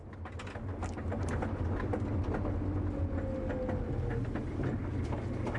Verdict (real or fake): real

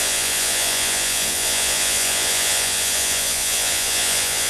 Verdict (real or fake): fake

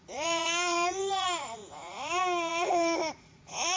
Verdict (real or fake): fake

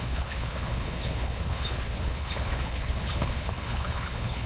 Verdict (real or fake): fake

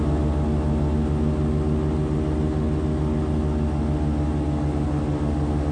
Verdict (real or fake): real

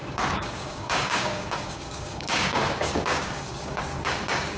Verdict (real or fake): fake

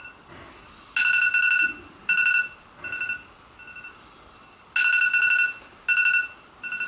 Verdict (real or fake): real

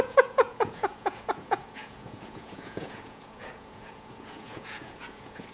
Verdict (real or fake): fake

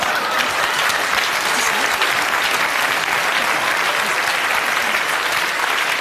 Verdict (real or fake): real